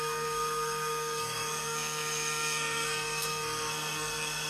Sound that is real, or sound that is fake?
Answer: fake